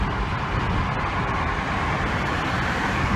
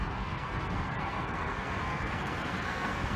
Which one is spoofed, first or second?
second